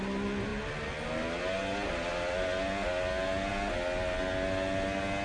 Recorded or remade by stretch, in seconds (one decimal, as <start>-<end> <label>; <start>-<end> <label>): 0.0-5.2 recorded